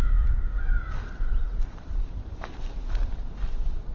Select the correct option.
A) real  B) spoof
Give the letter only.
B